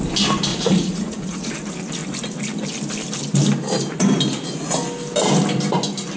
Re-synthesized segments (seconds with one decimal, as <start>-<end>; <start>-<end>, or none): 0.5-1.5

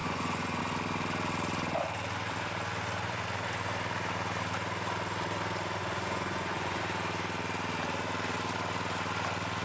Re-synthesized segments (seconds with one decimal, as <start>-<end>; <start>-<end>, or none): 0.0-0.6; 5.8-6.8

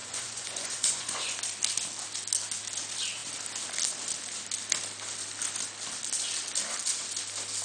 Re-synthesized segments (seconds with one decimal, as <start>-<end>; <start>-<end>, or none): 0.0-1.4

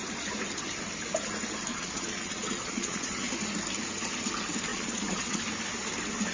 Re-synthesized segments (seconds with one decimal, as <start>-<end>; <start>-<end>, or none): 1.7-3.3; 4.7-5.4

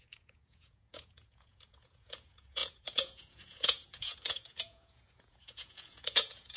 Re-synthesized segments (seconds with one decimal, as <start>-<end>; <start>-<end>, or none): 0.0-6.6

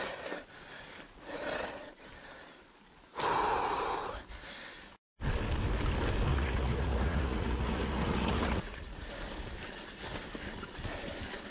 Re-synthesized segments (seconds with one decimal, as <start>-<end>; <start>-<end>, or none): 6.3-9.1

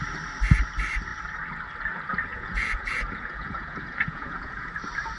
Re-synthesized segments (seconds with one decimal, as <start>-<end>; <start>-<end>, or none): 2.3-4.7